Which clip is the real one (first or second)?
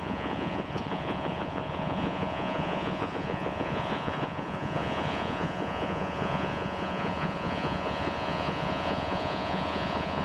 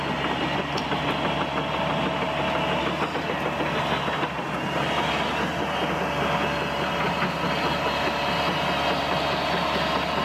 second